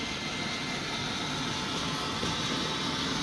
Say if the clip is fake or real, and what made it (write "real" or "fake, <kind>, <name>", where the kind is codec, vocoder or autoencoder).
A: real